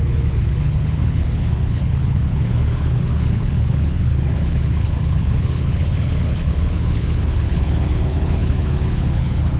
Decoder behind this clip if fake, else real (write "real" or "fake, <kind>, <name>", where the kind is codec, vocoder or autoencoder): fake, codec, HILCodec